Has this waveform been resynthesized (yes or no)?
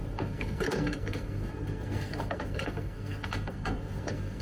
yes